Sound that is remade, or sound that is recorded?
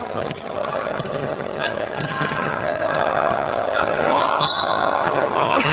remade